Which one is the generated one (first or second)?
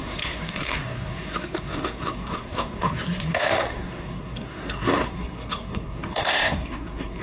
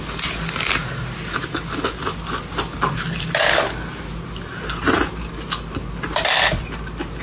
first